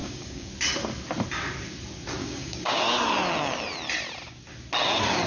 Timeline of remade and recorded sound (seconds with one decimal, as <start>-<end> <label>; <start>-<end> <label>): 0.0-0.5 remade; 0.5-2.2 recorded; 2.2-2.8 remade; 2.8-5.3 recorded